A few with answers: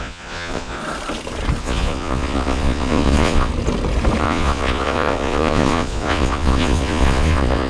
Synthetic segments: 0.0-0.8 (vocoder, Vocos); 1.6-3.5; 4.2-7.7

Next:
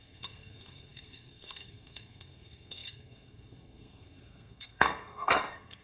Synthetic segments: 0.0-5.8 (codec, SNAC)

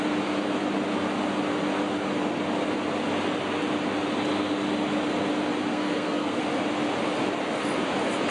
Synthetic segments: 5.7-6.4 (codec, SNAC)

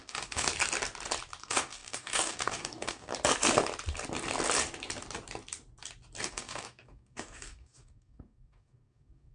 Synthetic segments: 0.0-0.5 (codec, DAC); 1.4-3.1; 6.2-9.3